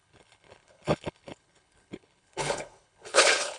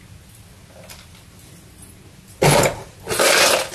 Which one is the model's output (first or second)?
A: first